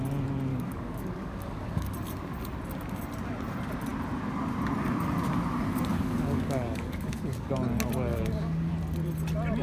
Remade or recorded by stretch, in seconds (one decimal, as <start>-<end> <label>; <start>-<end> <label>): 0.0-0.5 recorded; 0.5-1.9 remade; 1.9-5.9 recorded; 5.9-7.5 remade; 7.5-8.1 recorded; 8.1-8.7 remade; 8.7-9.6 recorded